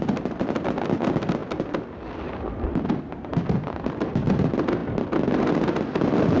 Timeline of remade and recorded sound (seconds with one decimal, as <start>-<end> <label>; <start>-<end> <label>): 0.0-6.4 recorded